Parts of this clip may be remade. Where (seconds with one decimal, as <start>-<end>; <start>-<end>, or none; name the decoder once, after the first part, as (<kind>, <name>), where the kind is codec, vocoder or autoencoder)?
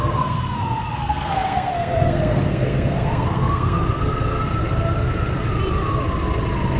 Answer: 0.0-4.5 (codec, SNAC)